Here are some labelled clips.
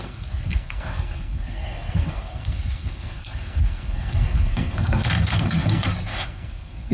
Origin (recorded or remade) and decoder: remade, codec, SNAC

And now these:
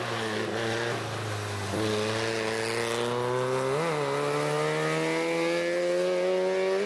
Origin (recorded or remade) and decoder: recorded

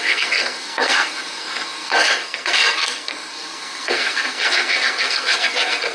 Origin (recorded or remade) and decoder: remade, codec, SNAC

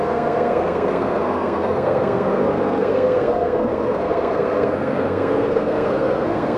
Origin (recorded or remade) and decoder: remade, codec, SNAC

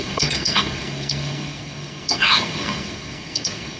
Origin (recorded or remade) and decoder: remade, codec, SNAC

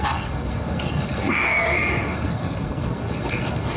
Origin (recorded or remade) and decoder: remade, codec, SNAC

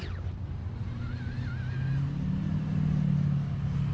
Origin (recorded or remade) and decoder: recorded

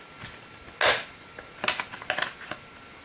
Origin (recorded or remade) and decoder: recorded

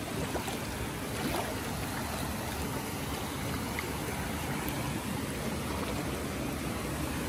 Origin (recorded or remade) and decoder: recorded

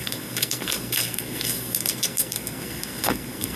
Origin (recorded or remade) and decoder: remade, codec, SNAC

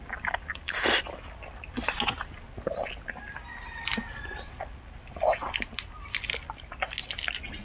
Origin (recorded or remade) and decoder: recorded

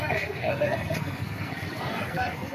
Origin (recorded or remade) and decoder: remade, codec, SNAC